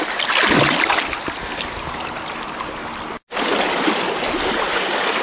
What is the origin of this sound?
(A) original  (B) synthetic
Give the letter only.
A